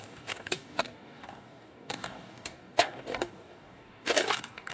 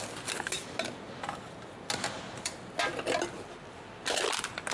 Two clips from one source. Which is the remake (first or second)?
first